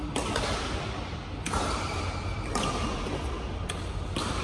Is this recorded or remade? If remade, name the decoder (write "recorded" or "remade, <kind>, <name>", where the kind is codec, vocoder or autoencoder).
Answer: recorded